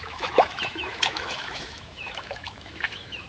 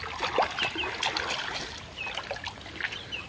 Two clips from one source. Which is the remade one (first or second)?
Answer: first